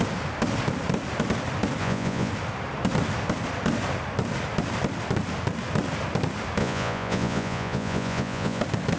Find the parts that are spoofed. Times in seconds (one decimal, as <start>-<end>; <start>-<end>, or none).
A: 1.8-2.3; 6.6-8.6